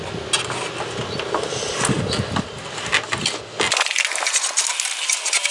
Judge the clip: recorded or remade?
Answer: recorded